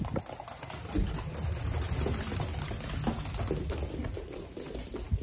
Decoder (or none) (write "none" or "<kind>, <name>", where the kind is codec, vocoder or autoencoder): none